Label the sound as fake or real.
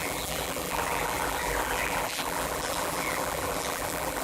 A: fake